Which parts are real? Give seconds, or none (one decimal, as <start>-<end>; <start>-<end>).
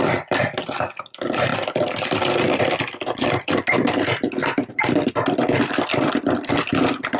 none